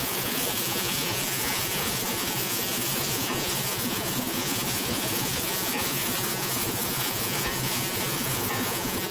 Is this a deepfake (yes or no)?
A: yes